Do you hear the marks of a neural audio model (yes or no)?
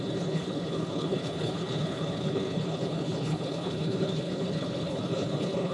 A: yes